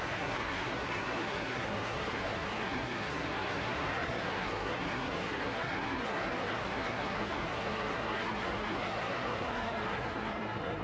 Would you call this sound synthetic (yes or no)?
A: yes